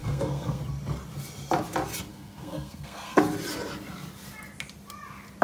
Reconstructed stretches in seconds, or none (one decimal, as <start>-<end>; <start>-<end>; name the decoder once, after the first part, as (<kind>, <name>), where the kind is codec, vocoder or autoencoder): 0.0-0.6 (codec, SNAC); 2.1-3.2